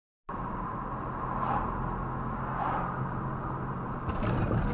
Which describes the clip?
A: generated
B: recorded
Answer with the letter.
B